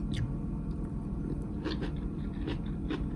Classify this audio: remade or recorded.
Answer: remade